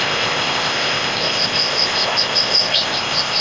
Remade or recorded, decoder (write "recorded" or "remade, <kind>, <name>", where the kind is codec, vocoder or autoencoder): remade, codec, ZipCodec